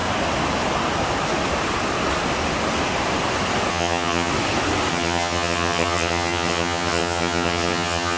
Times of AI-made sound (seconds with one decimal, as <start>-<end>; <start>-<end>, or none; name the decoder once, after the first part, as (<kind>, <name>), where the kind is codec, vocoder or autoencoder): 3.7-4.3 (vocoder, HiFi-GAN); 4.9-8.2